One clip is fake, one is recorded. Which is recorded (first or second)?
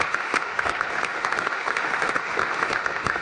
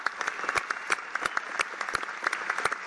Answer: second